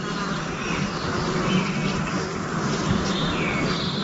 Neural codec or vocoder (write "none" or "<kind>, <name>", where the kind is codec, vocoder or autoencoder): none